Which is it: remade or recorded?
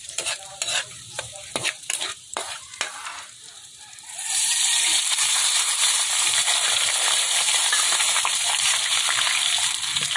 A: remade